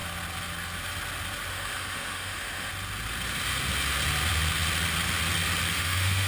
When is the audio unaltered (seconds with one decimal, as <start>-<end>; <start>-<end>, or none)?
0.0-1.5; 2.7-5.7

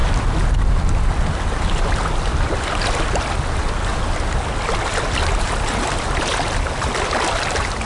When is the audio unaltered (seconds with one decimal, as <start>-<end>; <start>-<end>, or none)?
0.0-7.9

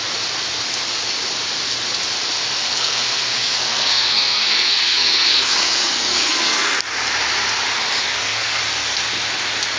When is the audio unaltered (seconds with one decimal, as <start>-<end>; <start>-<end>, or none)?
0.0-2.7; 6.8-8.1; 8.6-9.8

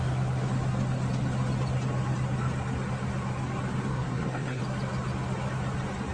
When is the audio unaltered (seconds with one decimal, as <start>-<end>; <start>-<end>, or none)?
0.0-3.9; 4.6-6.1

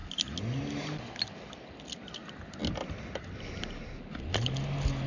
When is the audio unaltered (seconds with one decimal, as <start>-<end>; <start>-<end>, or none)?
0.0-5.1

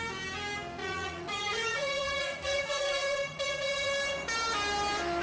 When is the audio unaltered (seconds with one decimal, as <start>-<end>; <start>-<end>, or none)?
0.0-0.8; 3.9-5.2

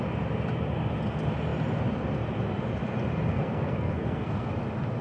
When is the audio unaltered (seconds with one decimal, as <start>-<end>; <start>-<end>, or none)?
0.0-3.3; 4.5-5.0

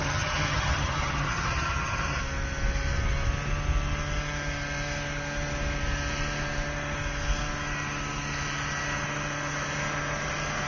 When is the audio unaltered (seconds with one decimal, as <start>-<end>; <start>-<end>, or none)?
2.2-10.7